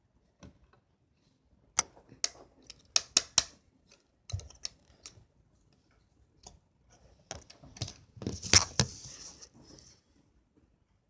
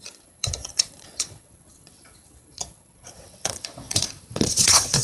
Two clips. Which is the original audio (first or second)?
first